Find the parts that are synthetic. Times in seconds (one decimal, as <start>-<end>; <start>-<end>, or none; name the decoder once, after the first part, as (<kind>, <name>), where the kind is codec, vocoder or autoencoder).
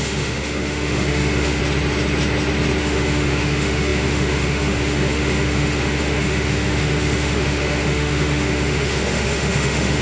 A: 0.0-1.6 (autoencoder, DAC-VAE); 2.8-10.0